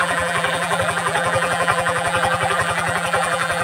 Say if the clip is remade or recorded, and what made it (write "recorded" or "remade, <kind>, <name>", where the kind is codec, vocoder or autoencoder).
remade, vocoder, BigVGAN v2